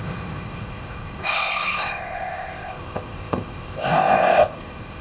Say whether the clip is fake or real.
fake